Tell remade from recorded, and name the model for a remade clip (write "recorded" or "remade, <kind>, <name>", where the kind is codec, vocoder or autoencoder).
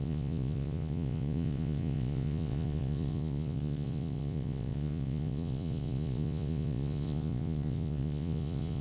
remade, vocoder, Vocos